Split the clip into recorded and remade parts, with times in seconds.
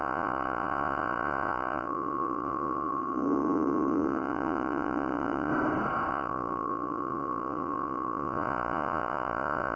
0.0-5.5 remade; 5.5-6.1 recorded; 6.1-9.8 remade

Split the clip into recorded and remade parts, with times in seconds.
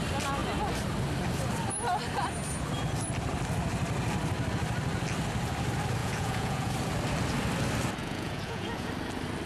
0.0-6.0 recorded; 6.0-6.7 remade; 6.7-8.0 recorded; 8.0-8.9 remade; 8.9-9.5 recorded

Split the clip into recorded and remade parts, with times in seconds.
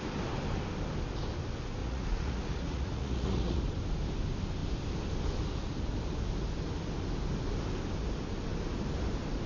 0.0-1.8 recorded; 1.8-3.6 remade; 3.6-9.5 recorded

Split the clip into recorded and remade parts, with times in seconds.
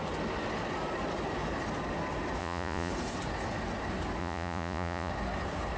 0.0-2.4 recorded; 2.4-2.9 remade; 2.9-4.2 recorded; 4.2-5.1 remade; 5.1-5.8 recorded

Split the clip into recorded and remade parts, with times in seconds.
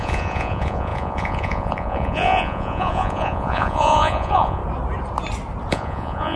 0.0-4.6 remade; 4.6-5.7 recorded; 5.7-6.4 remade